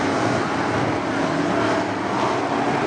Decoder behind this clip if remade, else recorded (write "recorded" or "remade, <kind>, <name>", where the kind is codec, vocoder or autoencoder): recorded